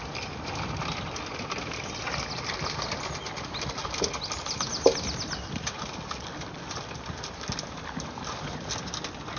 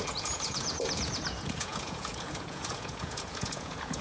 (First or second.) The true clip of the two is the first